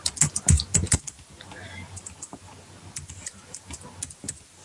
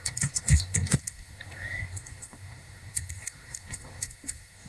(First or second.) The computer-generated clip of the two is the second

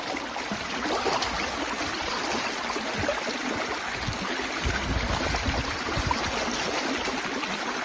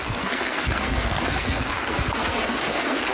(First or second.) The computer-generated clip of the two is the second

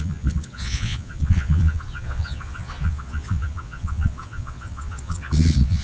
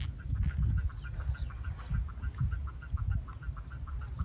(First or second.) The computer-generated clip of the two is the first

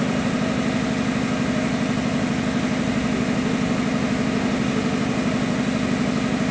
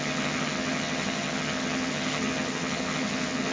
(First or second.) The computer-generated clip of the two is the second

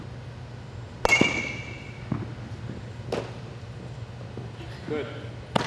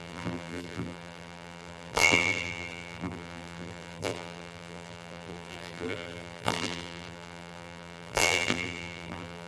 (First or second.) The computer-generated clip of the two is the second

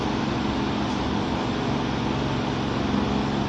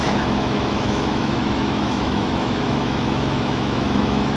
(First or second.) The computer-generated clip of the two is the second